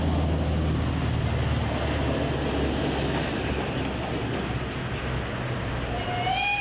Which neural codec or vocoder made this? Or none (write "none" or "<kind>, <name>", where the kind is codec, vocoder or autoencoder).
none